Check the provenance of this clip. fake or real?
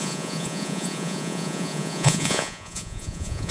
fake